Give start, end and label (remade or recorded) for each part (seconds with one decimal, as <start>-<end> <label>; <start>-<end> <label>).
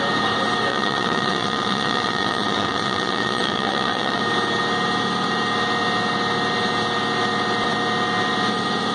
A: 0.0-0.7 recorded; 0.7-4.2 remade; 4.2-8.9 recorded